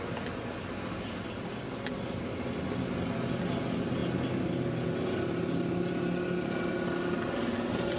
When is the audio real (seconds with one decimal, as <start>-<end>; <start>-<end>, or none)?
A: 0.0-8.0